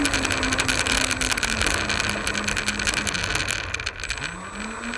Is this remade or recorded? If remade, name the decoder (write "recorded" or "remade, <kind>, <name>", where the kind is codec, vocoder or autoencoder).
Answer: recorded